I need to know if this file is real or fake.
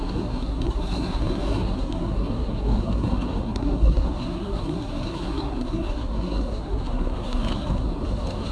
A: fake